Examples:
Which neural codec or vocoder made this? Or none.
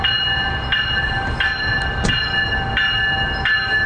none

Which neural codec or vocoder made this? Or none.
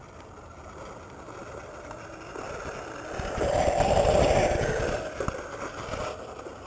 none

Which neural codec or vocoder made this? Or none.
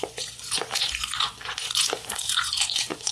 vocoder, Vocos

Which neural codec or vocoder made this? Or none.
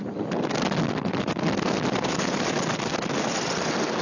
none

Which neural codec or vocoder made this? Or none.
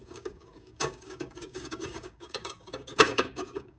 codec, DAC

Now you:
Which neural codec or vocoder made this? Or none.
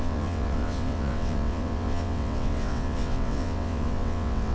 vocoder, WaveNeXt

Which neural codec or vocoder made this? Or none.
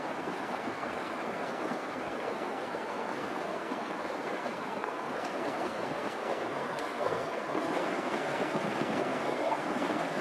codec, SNAC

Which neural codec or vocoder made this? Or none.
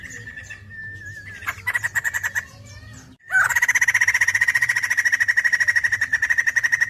none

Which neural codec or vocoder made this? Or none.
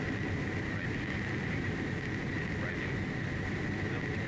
none